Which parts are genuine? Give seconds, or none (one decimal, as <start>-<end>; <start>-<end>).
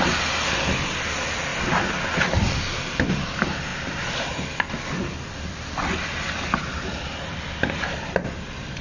0.0-1.5; 2.5-3.7